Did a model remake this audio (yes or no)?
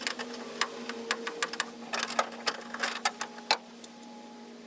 no